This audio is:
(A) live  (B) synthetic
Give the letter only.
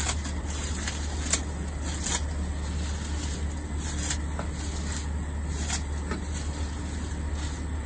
A